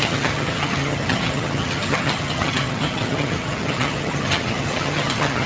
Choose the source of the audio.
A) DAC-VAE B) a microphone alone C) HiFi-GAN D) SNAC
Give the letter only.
C